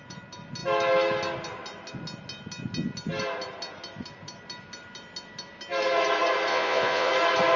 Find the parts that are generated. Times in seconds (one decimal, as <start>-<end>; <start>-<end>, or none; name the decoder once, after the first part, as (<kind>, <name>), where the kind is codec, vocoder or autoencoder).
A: 6.5-7.1 (vocoder, Vocos)

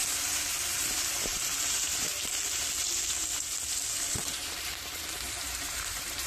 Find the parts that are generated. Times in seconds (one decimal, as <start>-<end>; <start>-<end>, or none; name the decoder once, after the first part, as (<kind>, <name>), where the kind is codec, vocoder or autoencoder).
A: 0.0-2.1 (vocoder, BigVGAN v2); 3.9-6.3

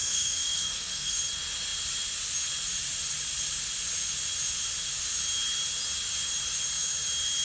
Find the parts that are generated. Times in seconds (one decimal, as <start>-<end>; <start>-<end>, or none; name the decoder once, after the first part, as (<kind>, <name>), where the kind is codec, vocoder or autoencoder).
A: 0.0-1.2 (codec, SNAC)

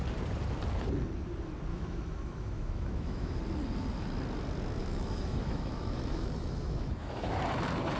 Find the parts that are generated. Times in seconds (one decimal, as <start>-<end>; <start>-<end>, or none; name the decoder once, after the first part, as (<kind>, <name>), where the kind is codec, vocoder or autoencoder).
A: 1.7-3.4 (autoencoder, DAC-VAE); 4.8-7.4

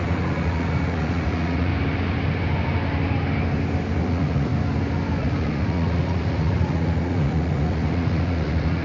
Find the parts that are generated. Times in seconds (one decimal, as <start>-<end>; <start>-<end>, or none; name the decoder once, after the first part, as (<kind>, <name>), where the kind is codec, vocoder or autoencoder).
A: 0.0-1.7 (vocoder, Vocos); 4.0-4.5; 5.2-8.8

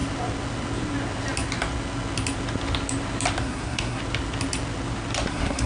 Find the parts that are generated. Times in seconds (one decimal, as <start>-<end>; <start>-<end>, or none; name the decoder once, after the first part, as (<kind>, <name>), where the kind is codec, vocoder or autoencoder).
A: 3.4-4.0 (codec, SNAC); 5.3-5.7

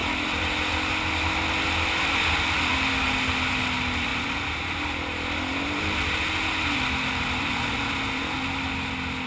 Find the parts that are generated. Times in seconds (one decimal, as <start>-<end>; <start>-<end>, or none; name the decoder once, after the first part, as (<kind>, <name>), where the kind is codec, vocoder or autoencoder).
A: none

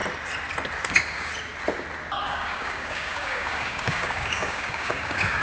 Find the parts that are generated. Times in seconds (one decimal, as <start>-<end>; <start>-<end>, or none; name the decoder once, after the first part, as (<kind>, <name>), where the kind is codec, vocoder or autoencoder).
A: 0.9-1.3 (codec, DAC); 2.2-5.4